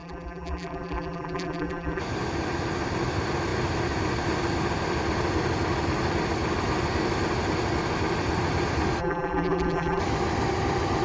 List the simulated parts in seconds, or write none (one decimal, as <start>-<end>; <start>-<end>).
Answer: 0.0-2.0; 9.0-10.0